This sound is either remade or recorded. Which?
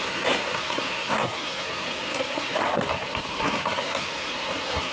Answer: remade